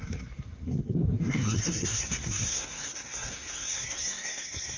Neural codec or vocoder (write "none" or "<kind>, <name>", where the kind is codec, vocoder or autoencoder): codec, SNAC